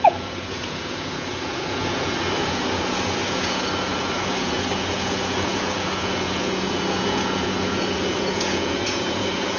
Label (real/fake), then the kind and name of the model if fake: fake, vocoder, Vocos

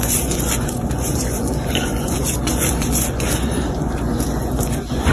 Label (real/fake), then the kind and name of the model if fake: fake, vocoder, Vocos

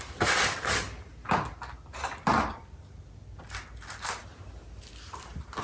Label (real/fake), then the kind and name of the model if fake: real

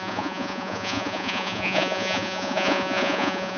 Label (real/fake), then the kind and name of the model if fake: fake, vocoder, Vocos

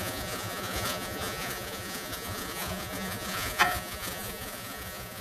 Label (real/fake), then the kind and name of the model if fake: fake, vocoder, Vocos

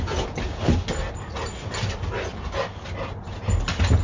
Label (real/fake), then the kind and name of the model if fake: real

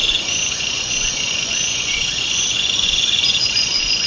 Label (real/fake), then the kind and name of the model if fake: fake, vocoder, Vocos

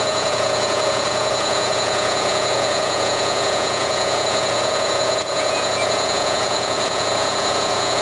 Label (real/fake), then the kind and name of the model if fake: fake, vocoder, Vocos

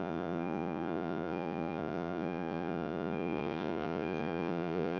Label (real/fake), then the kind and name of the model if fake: fake, vocoder, Vocos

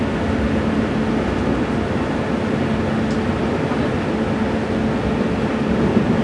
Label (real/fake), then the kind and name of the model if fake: real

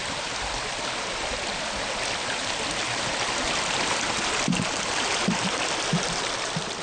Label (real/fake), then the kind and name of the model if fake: real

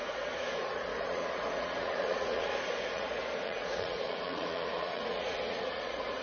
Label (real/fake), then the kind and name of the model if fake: fake, vocoder, Vocos